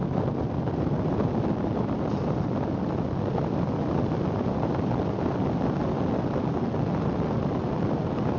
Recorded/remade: recorded